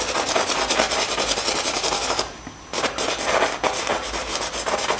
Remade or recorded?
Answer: recorded